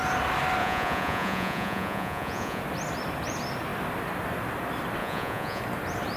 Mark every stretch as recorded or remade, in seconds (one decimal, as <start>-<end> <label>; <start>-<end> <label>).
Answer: 0.0-0.6 recorded; 0.6-2.6 remade; 2.6-5.0 recorded; 5.0-5.6 remade; 5.6-6.2 recorded